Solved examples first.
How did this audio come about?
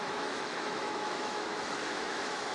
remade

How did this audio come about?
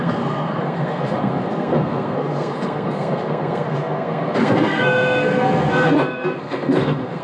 remade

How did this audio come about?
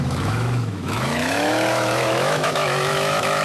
remade